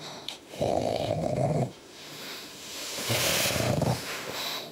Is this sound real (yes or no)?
no